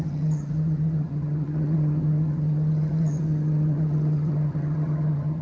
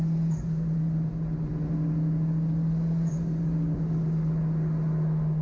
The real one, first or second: second